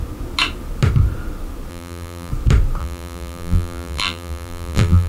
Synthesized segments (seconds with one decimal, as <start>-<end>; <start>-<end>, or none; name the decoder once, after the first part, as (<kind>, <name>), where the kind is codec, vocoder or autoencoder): 1.7-2.3 (vocoder, BigVGAN v2); 2.8-5.1